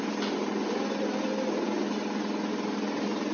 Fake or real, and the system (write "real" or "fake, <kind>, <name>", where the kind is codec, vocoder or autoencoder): real